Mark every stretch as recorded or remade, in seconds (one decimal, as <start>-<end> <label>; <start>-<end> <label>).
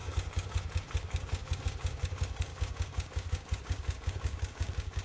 0.0-5.0 remade